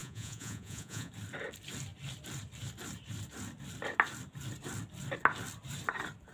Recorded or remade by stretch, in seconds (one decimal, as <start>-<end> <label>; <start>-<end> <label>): 0.0-1.1 remade; 1.1-6.3 recorded